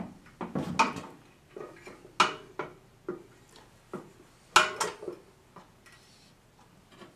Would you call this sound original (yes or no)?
yes